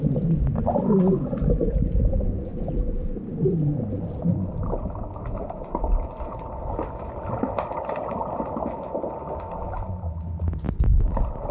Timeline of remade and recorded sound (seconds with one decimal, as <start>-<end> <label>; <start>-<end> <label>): 0.0-11.5 recorded